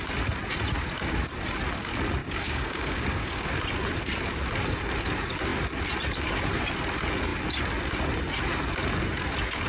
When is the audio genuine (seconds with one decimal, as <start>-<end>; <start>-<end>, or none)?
0.0-2.2; 3.5-9.7